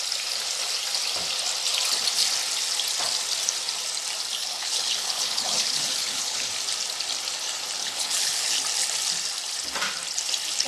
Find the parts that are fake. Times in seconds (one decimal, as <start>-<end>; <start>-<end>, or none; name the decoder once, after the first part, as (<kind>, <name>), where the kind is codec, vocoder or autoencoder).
4.4-6.5 (codec, HILCodec); 7.8-8.6